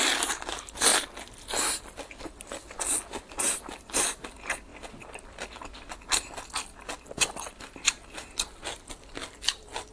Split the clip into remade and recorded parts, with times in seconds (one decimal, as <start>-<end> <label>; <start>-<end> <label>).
0.0-9.9 recorded